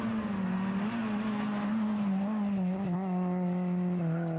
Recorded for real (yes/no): yes